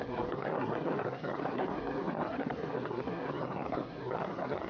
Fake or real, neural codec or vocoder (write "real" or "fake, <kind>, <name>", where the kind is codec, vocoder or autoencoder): fake, codec, SNAC